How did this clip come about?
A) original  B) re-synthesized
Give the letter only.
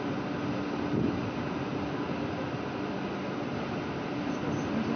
A